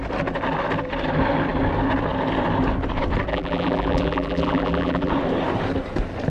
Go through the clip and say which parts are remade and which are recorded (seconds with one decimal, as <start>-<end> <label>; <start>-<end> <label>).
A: 0.0-3.3 recorded; 3.3-5.1 remade; 5.1-6.3 recorded